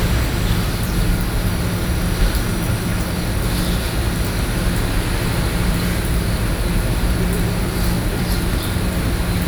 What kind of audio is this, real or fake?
real